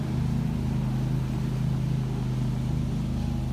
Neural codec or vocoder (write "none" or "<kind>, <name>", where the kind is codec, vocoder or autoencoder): none